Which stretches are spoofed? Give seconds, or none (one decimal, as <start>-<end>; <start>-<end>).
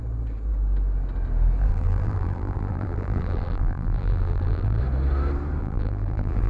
1.7-4.8; 5.6-6.5